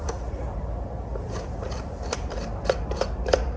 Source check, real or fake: real